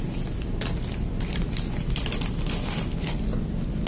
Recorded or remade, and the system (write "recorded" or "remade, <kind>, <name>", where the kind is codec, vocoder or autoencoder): recorded